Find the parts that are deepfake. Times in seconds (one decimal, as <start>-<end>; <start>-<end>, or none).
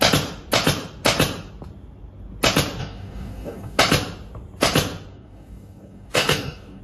2.8-3.8; 5.1-6.8